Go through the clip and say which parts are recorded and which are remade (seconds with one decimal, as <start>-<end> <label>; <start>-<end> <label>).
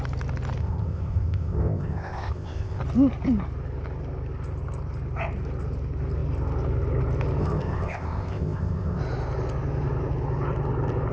0.0-0.6 recorded; 0.6-2.8 remade; 2.8-7.4 recorded; 7.4-9.0 remade; 9.0-11.1 recorded